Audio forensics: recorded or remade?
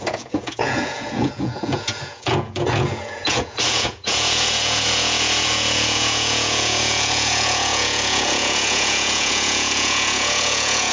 remade